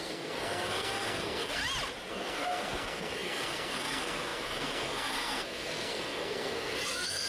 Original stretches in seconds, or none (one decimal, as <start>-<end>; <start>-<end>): 1.6-2.1